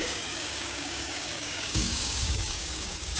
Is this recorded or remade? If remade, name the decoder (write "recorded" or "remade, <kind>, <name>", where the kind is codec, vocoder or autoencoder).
remade, codec, DAC